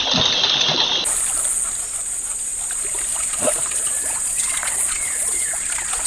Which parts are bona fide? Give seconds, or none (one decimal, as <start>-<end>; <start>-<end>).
0.0-3.1